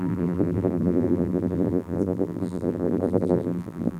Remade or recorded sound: remade